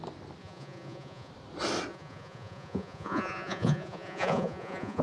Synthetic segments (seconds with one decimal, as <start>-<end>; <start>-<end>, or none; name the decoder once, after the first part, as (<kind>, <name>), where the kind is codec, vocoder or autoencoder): 0.4-1.3 (vocoder, Vocos); 1.9-5.0